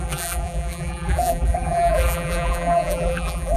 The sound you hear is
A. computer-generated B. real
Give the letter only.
A